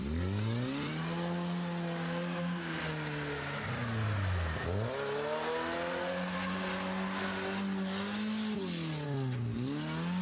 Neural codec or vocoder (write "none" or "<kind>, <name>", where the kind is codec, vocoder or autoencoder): none